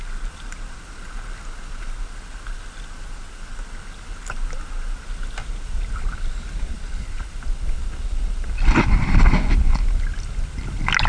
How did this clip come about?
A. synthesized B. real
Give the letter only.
B